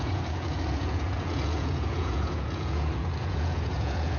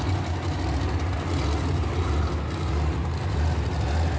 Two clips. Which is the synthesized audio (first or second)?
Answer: first